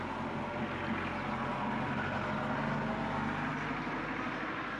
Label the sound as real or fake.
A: real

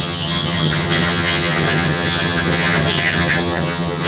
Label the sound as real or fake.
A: fake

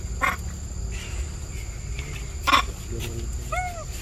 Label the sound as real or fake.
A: real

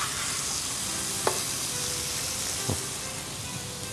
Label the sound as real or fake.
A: real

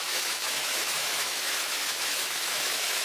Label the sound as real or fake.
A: fake